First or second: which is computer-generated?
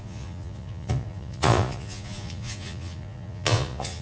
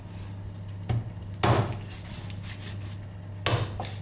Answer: first